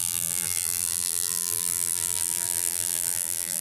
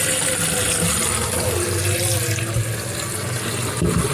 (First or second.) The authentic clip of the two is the second